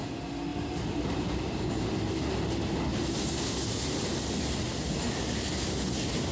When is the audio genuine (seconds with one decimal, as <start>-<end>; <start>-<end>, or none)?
0.0-0.5; 1.6-6.3